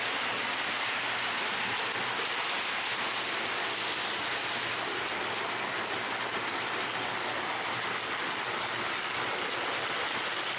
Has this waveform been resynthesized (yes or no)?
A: no